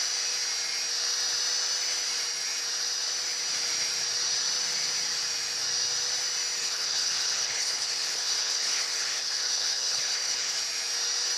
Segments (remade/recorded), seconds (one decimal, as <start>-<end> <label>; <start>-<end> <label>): 0.0-6.6 recorded; 6.6-10.6 remade; 10.6-11.4 recorded